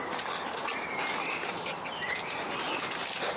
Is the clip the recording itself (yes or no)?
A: yes